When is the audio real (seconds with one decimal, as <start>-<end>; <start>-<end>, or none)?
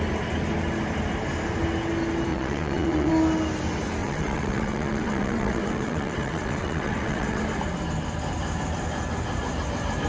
0.0-2.3; 3.1-4.0; 7.4-10.1